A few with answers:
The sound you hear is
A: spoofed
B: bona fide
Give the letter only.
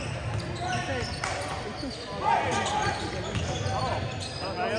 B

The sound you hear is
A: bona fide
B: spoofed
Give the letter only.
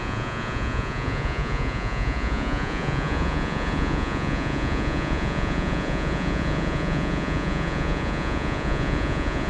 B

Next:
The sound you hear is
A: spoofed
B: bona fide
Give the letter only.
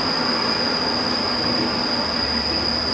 B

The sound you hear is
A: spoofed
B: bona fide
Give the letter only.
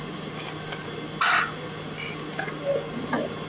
B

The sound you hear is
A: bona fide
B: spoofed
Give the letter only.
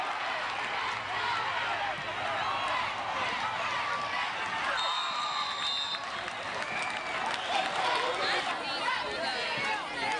A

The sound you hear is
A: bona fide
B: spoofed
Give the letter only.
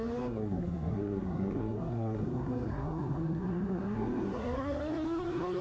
B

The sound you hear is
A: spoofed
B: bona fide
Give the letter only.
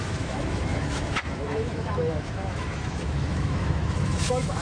A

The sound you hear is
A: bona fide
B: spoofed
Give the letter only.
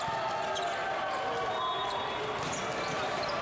A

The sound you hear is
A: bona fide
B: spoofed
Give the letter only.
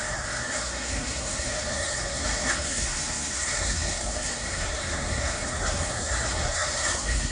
B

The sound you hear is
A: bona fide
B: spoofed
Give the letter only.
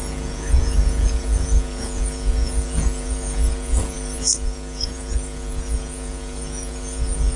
B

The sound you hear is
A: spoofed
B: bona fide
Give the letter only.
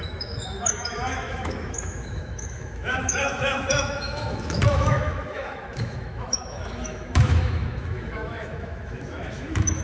A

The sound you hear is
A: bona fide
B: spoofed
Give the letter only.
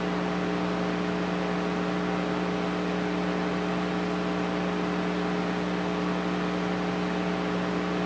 A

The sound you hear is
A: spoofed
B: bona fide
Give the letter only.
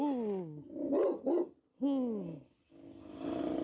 B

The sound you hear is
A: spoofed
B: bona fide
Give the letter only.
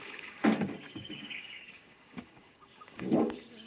A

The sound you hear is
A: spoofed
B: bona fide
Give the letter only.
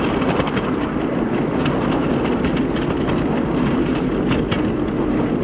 B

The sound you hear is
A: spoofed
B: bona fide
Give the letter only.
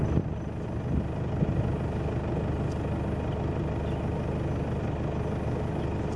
B